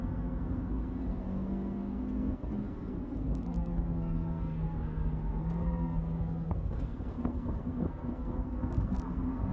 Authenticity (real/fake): fake